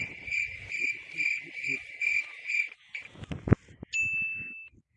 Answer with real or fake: real